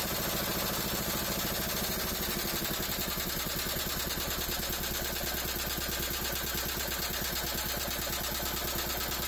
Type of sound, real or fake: real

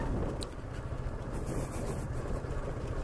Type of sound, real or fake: real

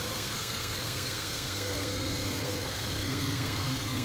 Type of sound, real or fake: fake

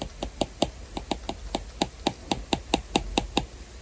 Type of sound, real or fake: real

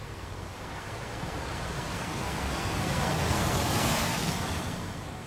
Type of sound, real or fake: fake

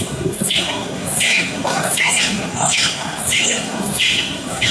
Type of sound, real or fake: fake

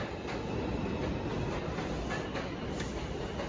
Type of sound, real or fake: real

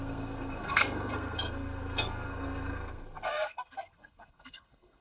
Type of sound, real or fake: fake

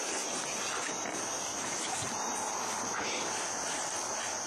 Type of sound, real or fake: real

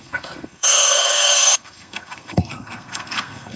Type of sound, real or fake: fake